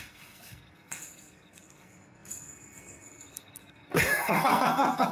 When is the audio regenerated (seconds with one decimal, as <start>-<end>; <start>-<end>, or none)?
0.0-5.1